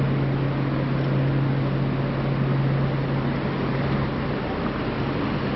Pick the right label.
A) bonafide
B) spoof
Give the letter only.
A